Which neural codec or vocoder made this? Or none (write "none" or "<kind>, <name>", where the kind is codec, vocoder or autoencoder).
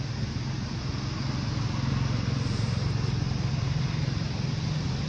none